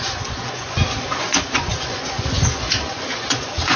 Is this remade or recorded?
remade